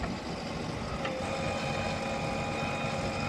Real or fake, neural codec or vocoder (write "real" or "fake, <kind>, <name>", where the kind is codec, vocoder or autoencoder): real